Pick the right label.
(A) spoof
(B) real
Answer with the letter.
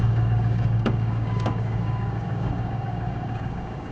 A